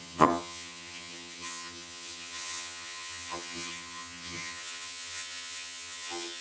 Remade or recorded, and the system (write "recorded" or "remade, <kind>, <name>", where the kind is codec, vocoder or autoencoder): remade, vocoder, HiFi-GAN